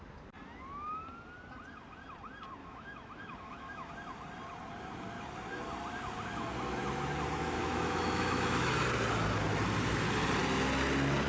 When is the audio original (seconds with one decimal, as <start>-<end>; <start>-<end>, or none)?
0.0-2.6; 3.9-7.6; 8.7-11.3